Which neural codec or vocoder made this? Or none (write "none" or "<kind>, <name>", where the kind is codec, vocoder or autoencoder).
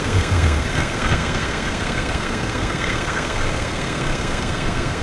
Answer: codec, SNAC